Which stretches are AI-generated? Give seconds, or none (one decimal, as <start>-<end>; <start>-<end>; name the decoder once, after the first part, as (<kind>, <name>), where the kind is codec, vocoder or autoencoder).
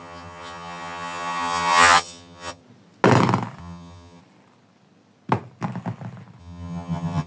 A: 0.0-2.6 (vocoder, HiFi-GAN); 3.6-4.2; 6.4-7.3